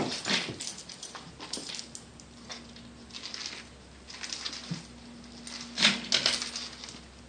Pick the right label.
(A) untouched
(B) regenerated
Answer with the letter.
A